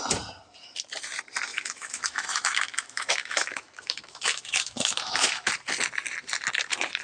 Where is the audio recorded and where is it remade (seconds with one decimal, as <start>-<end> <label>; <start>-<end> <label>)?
0.0-1.5 recorded; 1.5-5.5 remade; 5.5-7.0 recorded